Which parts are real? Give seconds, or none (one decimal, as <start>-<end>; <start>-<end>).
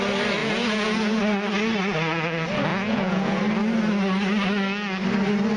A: 0.0-0.4; 1.2-2.7; 3.4-5.6